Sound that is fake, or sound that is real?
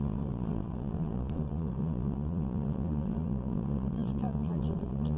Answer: fake